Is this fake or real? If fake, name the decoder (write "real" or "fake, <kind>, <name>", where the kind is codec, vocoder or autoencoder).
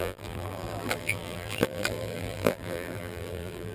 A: fake, vocoder, BigVGAN v2